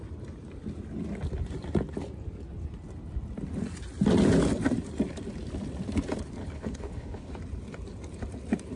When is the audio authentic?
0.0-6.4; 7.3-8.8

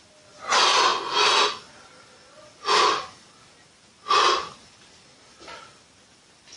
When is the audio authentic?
0.0-6.6

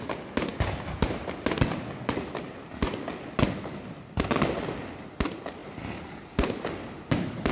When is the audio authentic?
0.0-5.6

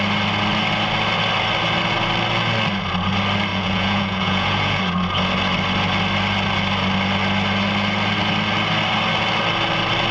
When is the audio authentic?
0.0-3.5; 4.8-10.1